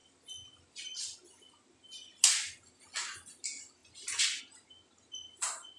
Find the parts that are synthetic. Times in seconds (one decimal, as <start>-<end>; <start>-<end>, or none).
none